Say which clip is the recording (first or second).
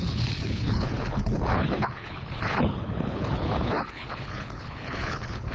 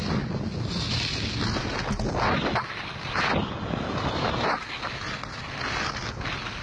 second